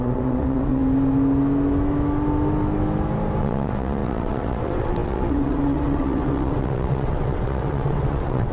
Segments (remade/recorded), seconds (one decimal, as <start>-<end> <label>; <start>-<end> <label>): 0.0-0.8 remade; 0.8-3.4 recorded; 3.4-8.5 remade